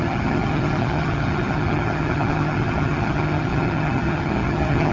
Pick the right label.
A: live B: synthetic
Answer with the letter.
B